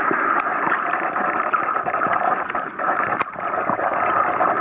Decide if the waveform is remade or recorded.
recorded